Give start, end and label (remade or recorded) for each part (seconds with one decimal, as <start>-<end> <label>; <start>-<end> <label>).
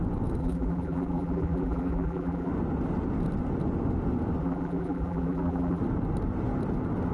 0.0-0.4 recorded; 0.4-2.5 remade; 2.5-4.4 recorded; 4.4-5.8 remade; 5.8-7.1 recorded